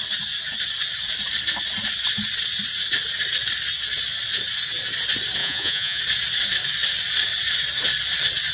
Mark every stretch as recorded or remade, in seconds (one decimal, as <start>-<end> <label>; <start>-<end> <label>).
0.0-5.4 recorded; 5.4-6.0 remade; 6.0-8.5 recorded